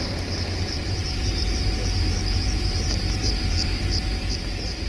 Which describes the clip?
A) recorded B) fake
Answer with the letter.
B